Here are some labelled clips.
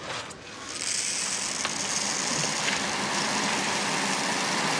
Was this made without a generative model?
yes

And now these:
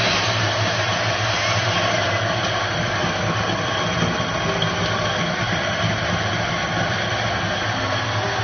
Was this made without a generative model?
yes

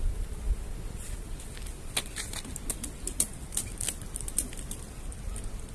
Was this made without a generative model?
yes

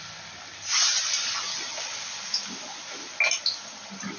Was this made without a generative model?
yes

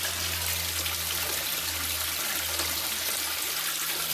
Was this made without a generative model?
yes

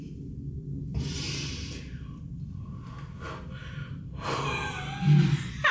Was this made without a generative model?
yes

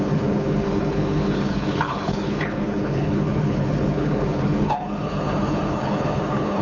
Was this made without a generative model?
no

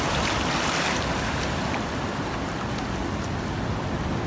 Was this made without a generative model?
yes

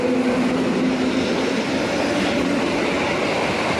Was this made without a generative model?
yes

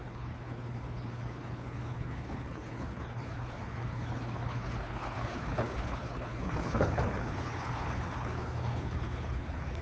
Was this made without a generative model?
no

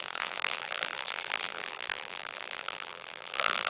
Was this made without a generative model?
no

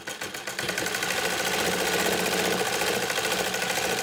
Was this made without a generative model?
yes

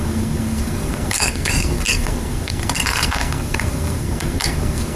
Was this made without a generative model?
no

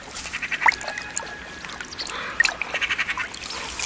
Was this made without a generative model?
yes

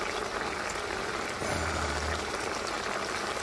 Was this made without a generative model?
yes